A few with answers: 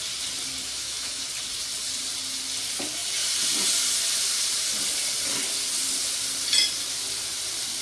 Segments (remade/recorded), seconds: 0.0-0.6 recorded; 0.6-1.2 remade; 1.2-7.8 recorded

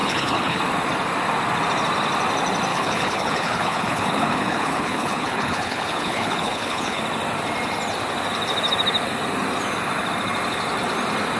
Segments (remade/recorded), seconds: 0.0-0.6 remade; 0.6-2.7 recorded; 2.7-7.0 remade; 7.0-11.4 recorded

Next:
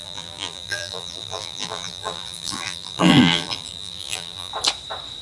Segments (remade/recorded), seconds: 0.0-4.5 remade; 4.5-5.2 recorded

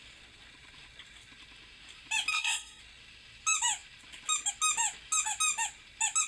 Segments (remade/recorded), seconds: 0.0-2.3 recorded; 2.3-2.8 remade; 2.8-6.3 recorded

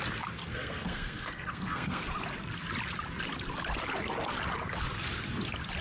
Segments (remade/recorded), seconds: 0.0-0.4 recorded; 0.4-2.0 remade; 2.0-5.8 recorded

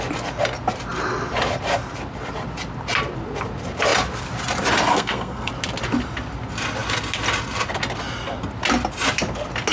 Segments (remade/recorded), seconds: 0.0-4.9 recorded; 4.9-5.5 remade; 5.5-9.7 recorded